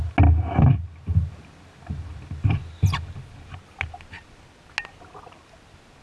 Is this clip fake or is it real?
real